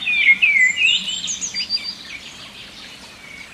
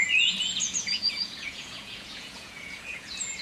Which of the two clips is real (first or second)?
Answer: first